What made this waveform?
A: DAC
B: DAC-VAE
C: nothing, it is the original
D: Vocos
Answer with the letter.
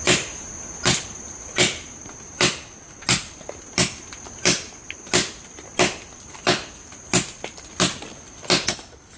C